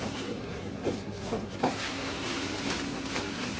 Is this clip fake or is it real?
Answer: fake